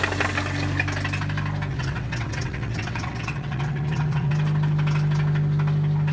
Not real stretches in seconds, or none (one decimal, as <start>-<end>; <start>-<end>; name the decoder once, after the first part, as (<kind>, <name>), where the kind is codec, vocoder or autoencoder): 1.7-4.3 (vocoder, WaveNeXt)